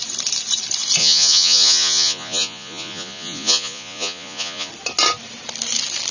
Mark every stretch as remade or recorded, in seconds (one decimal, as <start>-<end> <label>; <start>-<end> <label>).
0.0-1.0 recorded; 1.0-4.7 remade; 4.7-6.1 recorded